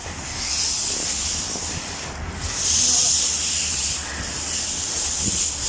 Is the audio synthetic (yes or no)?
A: no